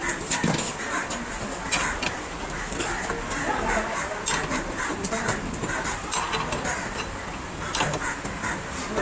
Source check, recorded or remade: recorded